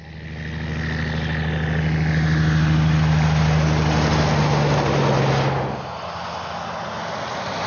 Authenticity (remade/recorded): recorded